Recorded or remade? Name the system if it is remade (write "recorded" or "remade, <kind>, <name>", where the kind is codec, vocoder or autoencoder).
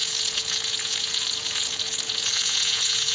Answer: remade, vocoder, Vocos